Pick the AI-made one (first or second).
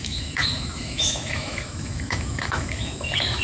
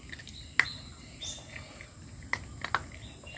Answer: first